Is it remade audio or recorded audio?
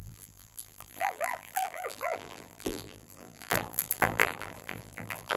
remade